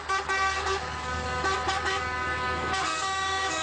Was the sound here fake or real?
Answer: fake